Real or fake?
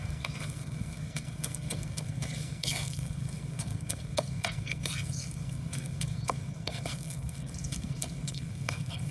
fake